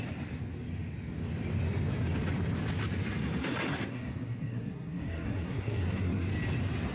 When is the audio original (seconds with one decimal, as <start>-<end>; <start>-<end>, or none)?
0.0-3.7; 6.3-6.9

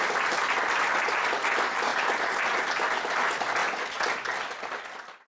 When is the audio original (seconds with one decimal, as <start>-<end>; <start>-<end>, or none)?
0.0-5.3

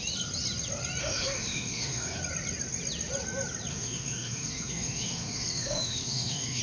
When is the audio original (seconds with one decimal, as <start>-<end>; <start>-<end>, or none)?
0.0-1.0; 2.2-3.7

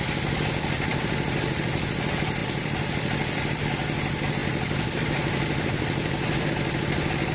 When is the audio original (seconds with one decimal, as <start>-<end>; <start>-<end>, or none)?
0.0-0.9; 1.9-2.4; 3.6-4.4; 6.5-7.3

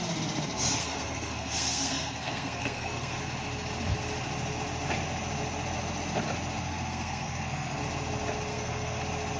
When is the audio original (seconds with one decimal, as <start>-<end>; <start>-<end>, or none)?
0.0-0.8; 3.2-6.6; 7.8-8.5; 9.0-9.4